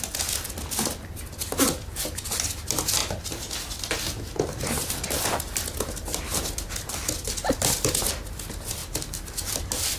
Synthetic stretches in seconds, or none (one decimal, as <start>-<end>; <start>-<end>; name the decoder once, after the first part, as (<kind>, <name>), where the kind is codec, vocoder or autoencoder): none